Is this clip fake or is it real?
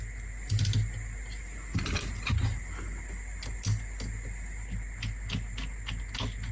real